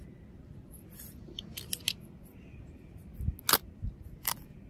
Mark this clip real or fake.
real